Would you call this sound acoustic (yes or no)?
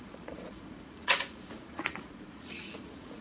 no